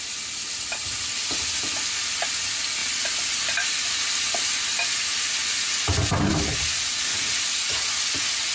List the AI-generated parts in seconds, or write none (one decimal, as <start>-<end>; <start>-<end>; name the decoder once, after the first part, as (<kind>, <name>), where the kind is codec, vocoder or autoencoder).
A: none